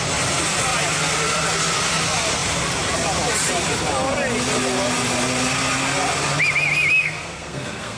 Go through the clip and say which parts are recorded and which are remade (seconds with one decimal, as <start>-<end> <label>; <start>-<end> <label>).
0.0-7.0 recorded; 7.0-8.0 remade

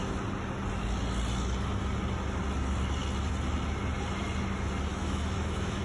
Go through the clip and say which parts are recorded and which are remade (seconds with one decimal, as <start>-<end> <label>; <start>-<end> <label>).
0.0-4.9 recorded; 4.9-5.8 remade

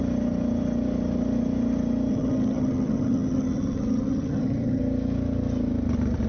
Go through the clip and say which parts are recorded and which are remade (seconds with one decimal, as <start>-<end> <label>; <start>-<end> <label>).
0.0-2.1 recorded; 2.1-4.8 remade; 4.8-6.3 recorded

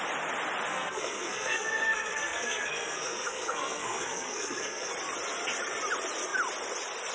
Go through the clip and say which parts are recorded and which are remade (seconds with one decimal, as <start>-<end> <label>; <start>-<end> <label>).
0.0-0.7 recorded; 0.7-4.9 remade; 4.9-7.1 recorded

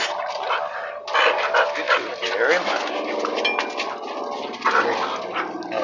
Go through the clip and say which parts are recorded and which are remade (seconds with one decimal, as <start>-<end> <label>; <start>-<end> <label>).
0.0-5.8 recorded

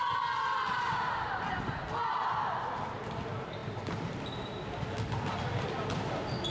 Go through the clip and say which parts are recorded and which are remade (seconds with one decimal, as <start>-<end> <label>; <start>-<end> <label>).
0.0-6.5 remade